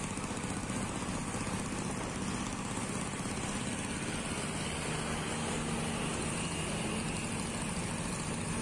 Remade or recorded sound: recorded